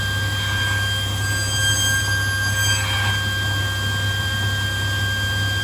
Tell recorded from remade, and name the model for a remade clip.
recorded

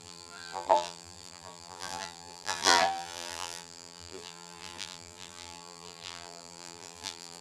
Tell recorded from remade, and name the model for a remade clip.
remade, vocoder, BigVGAN v2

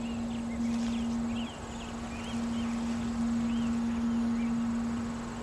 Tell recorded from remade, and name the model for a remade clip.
recorded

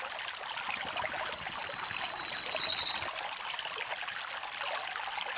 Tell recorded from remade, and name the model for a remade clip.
recorded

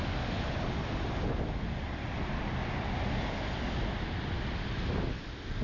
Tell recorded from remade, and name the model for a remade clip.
recorded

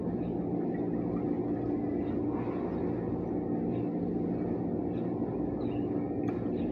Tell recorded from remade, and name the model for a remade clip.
recorded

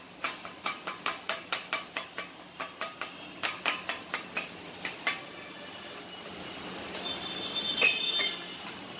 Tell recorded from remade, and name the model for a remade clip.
recorded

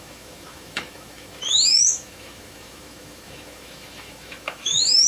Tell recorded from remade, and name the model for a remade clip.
remade, autoencoder, DAC-VAE